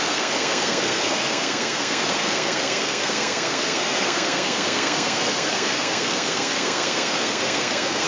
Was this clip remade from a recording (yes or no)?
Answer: yes